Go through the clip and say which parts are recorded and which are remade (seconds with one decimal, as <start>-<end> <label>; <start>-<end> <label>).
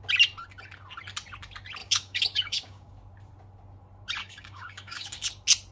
0.0-1.8 recorded; 1.8-2.9 remade; 2.9-4.2 recorded; 4.2-5.3 remade; 5.3-5.7 recorded